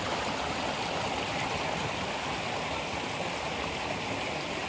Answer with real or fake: real